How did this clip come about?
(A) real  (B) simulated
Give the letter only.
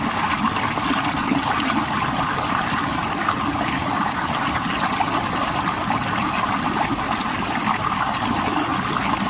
A